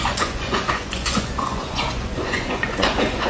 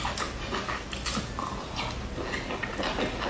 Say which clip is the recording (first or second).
second